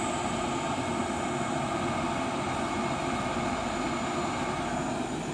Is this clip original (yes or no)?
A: yes